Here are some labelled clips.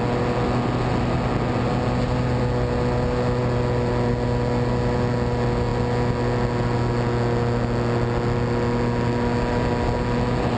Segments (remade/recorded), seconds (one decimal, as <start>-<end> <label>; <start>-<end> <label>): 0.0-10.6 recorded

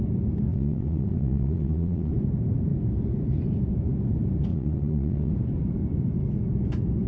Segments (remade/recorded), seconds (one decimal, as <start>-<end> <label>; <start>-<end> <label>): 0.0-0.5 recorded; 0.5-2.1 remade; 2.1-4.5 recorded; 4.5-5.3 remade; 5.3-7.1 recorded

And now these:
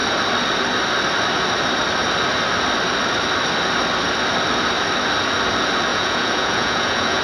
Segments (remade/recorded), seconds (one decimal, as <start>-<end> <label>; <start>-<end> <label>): 0.0-5.9 recorded; 5.9-7.2 remade